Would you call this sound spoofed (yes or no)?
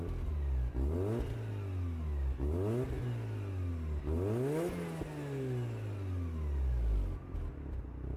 no